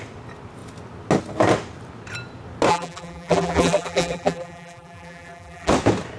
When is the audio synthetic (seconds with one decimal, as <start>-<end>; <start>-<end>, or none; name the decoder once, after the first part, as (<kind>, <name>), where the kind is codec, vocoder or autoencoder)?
2.7-5.7 (vocoder, BigVGAN v2)